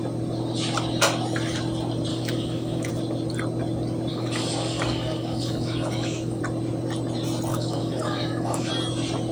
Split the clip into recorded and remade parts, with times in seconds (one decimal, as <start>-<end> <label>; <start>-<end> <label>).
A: 0.0-2.1 recorded; 2.1-2.9 remade; 2.9-4.1 recorded; 4.1-6.4 remade; 6.4-7.5 recorded; 7.5-8.7 remade; 8.7-9.3 recorded